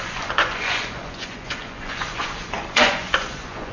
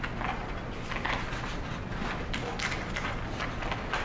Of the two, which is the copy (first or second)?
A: first